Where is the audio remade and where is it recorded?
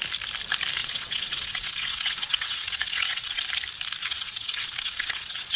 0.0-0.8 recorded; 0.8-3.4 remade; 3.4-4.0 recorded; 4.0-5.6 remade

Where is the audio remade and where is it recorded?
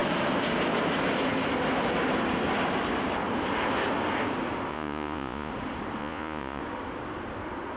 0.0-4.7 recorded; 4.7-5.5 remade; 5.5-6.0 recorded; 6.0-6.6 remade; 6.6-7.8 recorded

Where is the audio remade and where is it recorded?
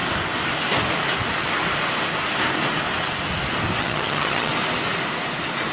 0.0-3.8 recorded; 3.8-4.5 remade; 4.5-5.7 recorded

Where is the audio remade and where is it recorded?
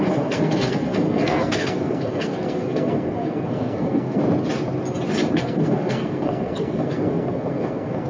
0.0-4.2 remade; 4.2-5.3 recorded; 5.3-8.1 remade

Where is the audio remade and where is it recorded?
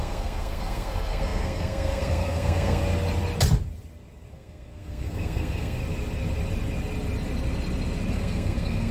0.0-2.8 remade; 2.8-4.3 recorded; 4.3-5.8 remade; 5.8-8.1 recorded; 8.1-8.9 remade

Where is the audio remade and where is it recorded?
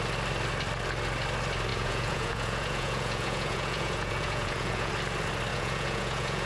0.0-1.7 recorded; 1.7-4.9 remade; 4.9-5.5 recorded; 5.5-6.5 remade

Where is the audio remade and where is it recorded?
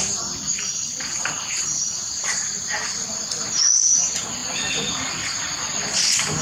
0.0-6.4 recorded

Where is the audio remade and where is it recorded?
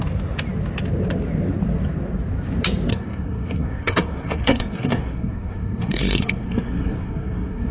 0.0-2.9 recorded; 2.9-7.7 remade